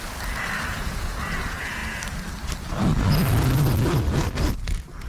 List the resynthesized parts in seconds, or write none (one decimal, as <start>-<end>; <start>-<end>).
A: 0.7-1.8